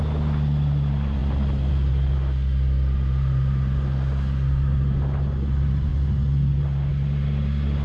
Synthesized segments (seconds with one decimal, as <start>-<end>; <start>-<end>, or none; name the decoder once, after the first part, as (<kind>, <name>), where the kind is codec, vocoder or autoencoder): none